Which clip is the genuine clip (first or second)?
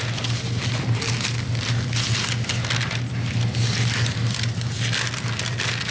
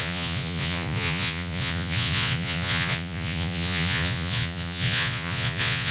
first